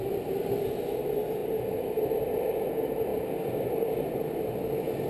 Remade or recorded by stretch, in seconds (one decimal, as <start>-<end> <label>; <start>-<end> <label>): 0.0-5.1 recorded